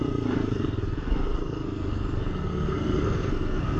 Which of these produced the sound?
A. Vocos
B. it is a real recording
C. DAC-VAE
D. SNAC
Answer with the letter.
D